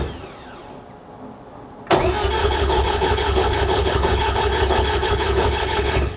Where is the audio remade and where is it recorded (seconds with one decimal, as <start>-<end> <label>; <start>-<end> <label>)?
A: 0.0-2.4 recorded; 2.4-6.2 remade